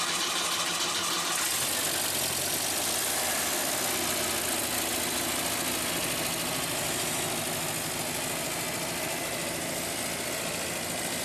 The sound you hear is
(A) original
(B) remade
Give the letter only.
A